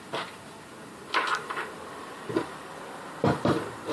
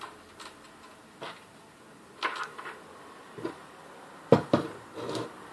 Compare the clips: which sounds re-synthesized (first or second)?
first